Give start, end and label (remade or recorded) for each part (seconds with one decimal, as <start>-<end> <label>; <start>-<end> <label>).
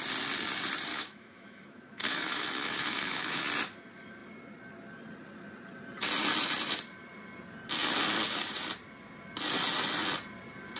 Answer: 0.0-0.9 recorded; 0.9-3.4 remade; 3.4-10.8 recorded